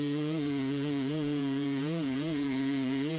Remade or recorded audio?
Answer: remade